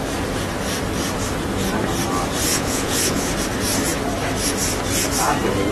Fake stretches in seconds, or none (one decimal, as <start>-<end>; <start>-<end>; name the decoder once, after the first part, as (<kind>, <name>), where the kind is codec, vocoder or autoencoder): 2.5-3.3 (vocoder, Vocos)